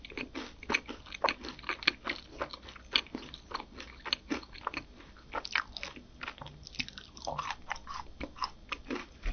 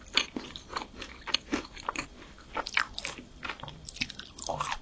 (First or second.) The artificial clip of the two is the second